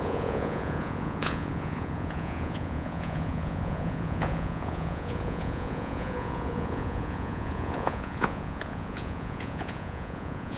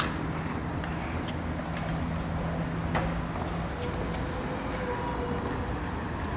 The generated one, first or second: first